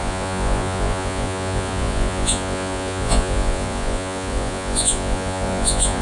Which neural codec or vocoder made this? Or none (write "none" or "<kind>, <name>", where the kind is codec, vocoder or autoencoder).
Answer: vocoder, Vocos